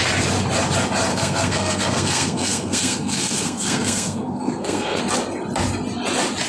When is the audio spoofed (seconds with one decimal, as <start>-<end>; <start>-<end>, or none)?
1.1-5.0